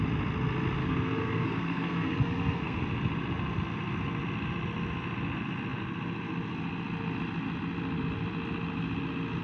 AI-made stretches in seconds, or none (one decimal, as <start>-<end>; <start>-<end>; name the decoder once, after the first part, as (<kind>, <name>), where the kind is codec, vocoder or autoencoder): 0.8-2.8 (codec, SNAC)